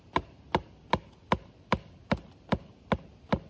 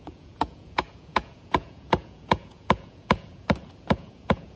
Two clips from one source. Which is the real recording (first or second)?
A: first